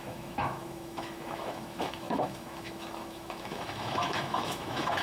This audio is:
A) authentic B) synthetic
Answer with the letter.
B